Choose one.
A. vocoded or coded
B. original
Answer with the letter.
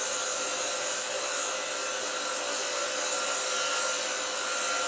B